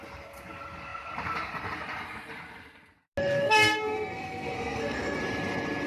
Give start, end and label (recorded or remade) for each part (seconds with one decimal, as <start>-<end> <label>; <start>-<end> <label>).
0.0-3.2 recorded; 3.2-5.2 remade; 5.2-5.9 recorded